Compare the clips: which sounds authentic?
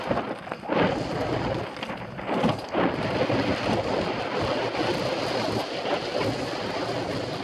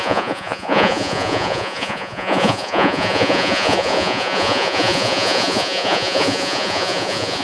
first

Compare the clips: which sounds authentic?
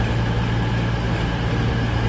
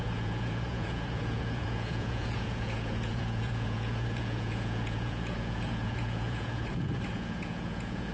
first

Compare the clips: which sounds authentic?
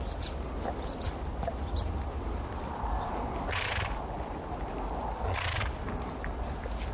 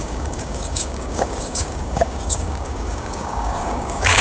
first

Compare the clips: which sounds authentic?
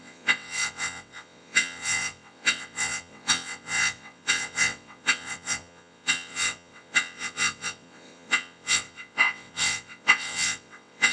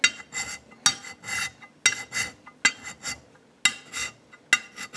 second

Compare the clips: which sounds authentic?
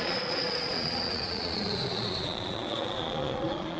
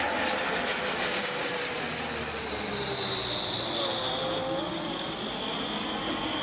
second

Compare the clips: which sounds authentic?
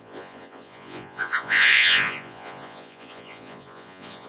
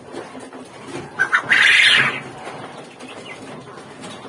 second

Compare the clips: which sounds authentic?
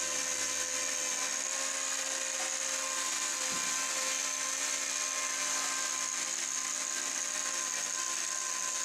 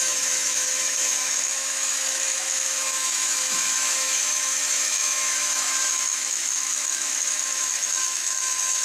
first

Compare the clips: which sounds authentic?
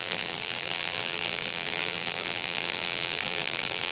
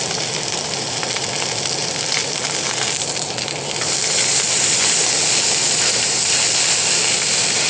second